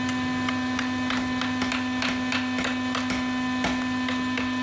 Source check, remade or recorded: recorded